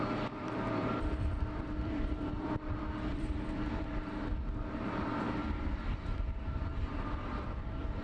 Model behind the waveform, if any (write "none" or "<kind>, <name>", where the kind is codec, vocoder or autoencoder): vocoder, BigVGAN v2